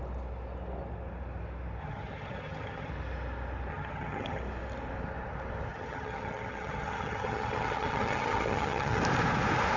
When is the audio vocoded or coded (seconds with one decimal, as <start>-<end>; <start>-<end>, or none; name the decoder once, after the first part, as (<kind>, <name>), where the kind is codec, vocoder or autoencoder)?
1.8-2.9 (vocoder, HiFi-GAN); 3.7-4.4; 5.7-9.0